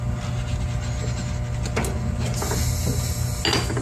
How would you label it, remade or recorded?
recorded